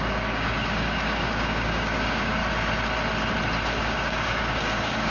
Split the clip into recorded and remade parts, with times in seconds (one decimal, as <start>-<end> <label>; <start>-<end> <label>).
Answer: 0.0-2.4 remade; 2.4-3.8 recorded; 3.8-5.1 remade